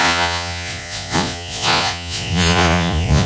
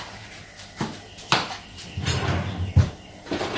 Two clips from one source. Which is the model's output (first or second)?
first